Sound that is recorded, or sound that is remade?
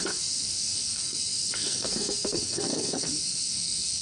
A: remade